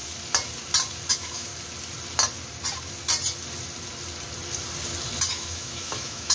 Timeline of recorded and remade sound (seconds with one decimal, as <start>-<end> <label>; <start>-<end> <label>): 0.0-1.1 recorded; 1.1-1.5 remade; 1.5-5.3 recorded; 5.3-6.3 remade